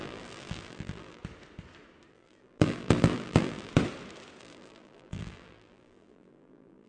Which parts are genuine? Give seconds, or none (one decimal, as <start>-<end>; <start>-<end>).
1.2-2.1; 3.7-4.4